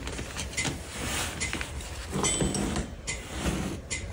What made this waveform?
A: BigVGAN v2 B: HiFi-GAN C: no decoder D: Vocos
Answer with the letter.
C